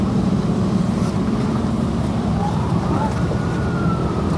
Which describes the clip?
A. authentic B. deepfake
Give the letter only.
B